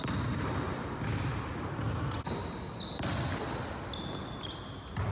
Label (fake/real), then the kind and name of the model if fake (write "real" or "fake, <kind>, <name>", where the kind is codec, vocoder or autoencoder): real